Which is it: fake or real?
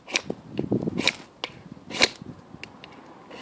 real